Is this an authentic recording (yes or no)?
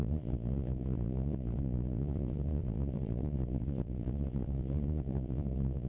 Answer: no